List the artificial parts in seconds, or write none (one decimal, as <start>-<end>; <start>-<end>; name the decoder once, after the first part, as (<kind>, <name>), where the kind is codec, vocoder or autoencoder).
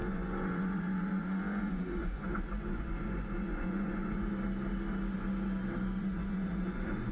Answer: 0.0-4.3 (vocoder, Vocos); 6.0-7.1